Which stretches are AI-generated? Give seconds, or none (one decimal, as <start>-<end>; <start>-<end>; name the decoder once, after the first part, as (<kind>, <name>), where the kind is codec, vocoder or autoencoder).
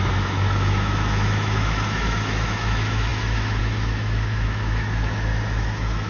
0.0-6.1 (autoencoder, DAC-VAE)